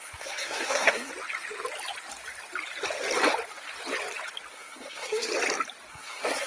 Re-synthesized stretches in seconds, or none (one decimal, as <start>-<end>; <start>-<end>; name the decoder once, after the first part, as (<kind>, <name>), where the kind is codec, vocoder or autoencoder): 0.0-1.1 (codec, SNAC); 4.5-5.3; 5.9-6.5